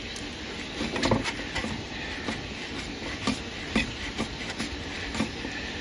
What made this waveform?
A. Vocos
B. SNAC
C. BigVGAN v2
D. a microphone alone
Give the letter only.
D